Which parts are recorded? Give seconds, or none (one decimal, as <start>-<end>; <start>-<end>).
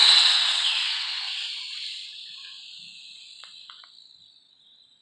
1.2-5.0